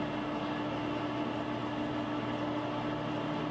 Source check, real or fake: real